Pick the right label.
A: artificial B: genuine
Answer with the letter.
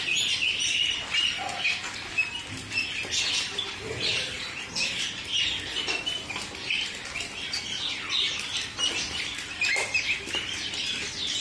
B